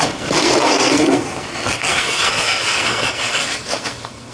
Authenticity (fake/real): fake